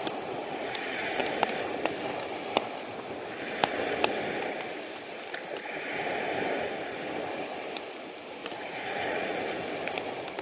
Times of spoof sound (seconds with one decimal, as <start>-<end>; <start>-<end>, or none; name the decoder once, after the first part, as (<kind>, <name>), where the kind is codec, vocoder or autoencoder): 0.4-1.2 (vocoder, Vocos); 8.4-9.4